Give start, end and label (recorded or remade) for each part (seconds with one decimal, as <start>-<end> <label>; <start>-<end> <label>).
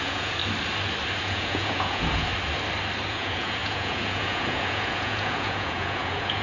0.0-0.4 remade; 0.4-1.2 recorded; 1.2-2.3 remade; 2.3-3.1 recorded; 3.1-6.4 remade